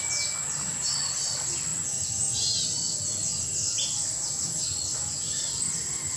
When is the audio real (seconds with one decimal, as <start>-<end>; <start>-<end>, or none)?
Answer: 0.0-6.2